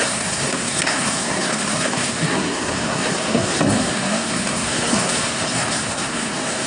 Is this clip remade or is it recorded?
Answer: remade